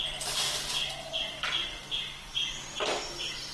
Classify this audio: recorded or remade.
recorded